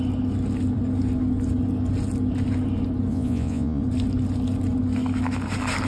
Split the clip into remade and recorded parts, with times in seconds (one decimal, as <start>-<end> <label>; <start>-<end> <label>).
0.0-3.1 recorded; 3.1-3.8 remade; 3.8-5.9 recorded